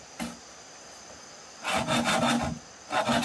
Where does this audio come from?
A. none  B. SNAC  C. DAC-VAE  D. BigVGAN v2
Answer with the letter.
A